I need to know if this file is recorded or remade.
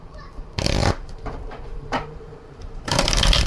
remade